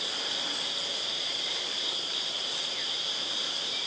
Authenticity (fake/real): real